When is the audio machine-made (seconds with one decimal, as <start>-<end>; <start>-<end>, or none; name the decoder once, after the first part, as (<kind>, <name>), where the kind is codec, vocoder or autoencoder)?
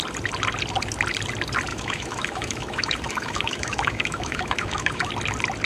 1.7-5.1 (autoencoder, DAC-VAE)